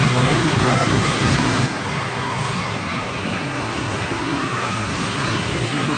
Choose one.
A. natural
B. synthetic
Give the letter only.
B